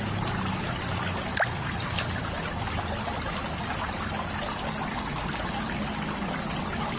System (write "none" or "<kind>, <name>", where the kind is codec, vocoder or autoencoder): none